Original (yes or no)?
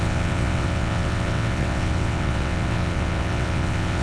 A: no